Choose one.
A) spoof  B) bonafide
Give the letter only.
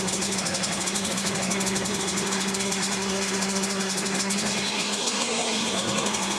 A